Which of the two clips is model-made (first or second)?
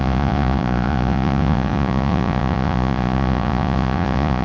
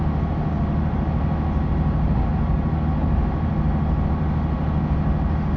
first